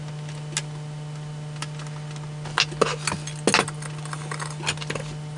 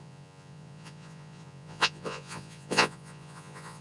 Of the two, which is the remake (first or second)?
second